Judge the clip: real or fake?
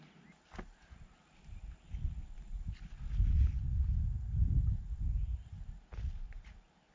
real